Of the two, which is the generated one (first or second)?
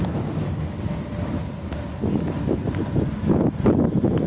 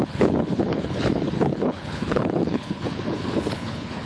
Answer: second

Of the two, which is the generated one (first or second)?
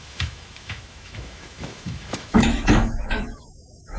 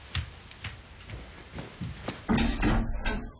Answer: first